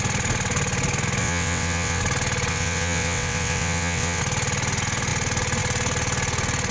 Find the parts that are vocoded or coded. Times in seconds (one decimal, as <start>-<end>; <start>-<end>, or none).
1.2-2.0; 2.5-4.2